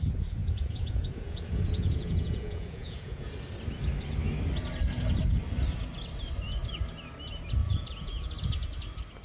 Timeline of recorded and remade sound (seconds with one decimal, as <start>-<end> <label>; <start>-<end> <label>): 0.0-0.4 recorded; 0.4-3.3 remade; 3.3-7.6 recorded; 7.6-8.3 remade; 8.3-9.2 recorded